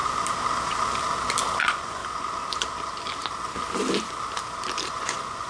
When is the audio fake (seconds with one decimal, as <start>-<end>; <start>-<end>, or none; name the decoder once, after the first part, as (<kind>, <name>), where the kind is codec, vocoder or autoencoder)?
1.6-2.0 (vocoder, Vocos); 4.9-5.5